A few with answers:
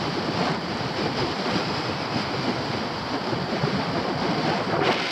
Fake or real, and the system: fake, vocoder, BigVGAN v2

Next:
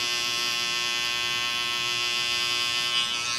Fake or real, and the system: real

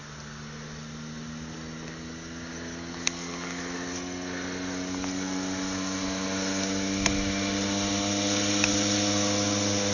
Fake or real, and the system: real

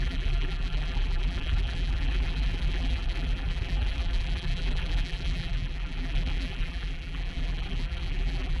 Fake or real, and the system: fake, vocoder, BigVGAN v2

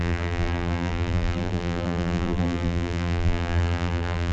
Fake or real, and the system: fake, vocoder, BigVGAN v2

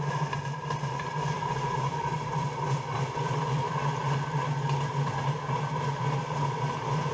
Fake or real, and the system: fake, vocoder, BigVGAN v2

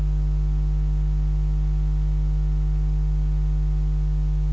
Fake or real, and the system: real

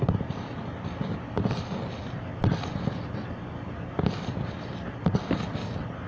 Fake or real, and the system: real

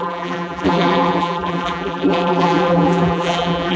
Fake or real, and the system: fake, vocoder, BigVGAN v2